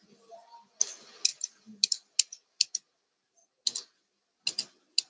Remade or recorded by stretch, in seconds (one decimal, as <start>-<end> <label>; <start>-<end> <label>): 0.0-5.1 recorded